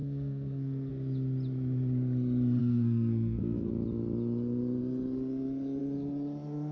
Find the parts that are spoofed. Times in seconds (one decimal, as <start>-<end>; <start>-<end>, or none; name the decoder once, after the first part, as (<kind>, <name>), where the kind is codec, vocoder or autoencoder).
0.0-0.9 (codec, SNAC); 2.6-3.7